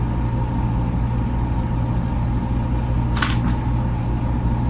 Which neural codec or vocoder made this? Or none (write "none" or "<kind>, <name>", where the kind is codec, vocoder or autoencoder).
none